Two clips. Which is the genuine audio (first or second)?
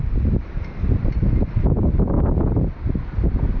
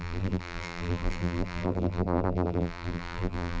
first